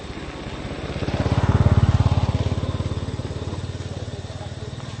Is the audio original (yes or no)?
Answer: yes